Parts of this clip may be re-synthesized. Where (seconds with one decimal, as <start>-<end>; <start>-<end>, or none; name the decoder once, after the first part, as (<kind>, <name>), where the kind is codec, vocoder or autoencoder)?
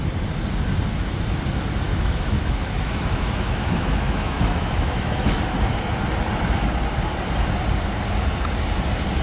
1.9-5.4 (autoencoder, DAC-VAE)